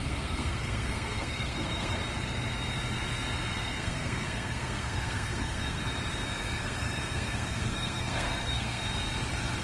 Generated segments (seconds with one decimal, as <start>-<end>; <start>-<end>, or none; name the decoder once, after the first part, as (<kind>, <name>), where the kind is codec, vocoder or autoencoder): 0.0-2.0 (codec, SNAC); 3.5-5.8; 6.6-8.8